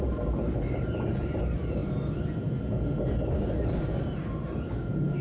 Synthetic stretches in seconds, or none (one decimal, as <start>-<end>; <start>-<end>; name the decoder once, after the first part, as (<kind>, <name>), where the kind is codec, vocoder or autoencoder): 0.0-1.8 (vocoder, BigVGAN v2)